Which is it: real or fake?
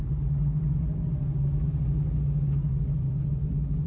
real